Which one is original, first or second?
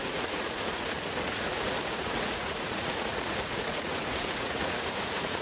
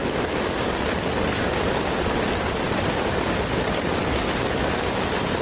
second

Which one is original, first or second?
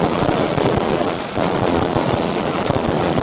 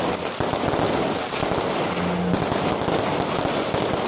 second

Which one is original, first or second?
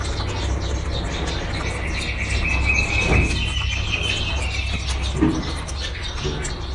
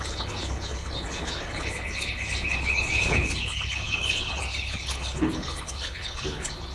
first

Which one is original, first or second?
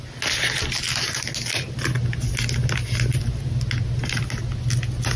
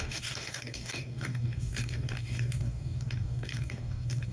first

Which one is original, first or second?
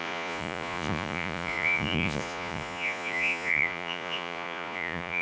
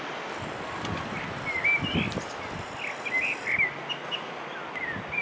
second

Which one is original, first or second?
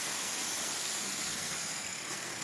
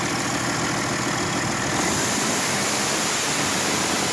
second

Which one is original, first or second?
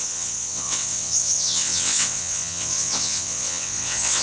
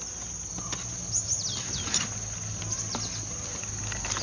second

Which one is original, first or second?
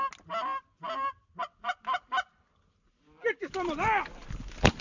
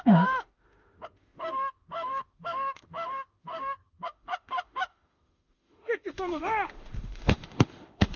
first